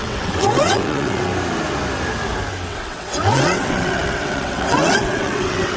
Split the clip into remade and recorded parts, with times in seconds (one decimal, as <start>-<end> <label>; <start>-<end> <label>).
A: 0.0-1.3 remade; 1.3-2.7 recorded; 2.7-5.8 remade